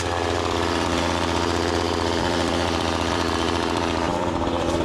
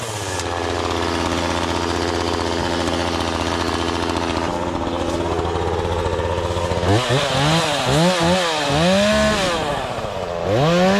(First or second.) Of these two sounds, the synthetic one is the first